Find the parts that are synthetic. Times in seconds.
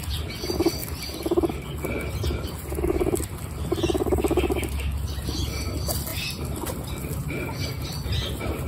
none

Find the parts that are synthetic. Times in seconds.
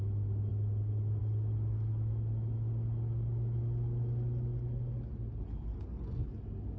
none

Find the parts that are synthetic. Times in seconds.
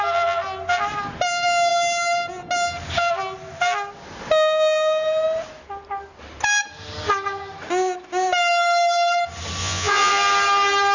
9.6-10.1 (vocoder, Vocos)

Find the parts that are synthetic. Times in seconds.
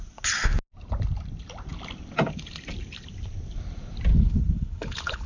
4.1-5.3 (codec, HILCodec)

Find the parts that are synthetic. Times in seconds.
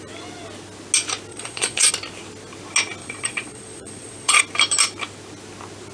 1.3-1.9 (vocoder, Vocos); 3.0-4.4